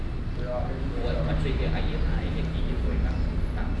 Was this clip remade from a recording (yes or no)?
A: no